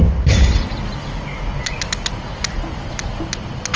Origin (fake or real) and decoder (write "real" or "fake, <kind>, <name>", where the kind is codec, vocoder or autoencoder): real